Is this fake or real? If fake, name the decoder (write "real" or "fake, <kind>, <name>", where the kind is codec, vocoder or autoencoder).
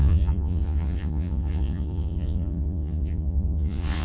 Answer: fake, vocoder, Vocos